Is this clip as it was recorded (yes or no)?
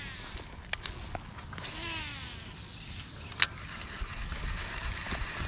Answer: yes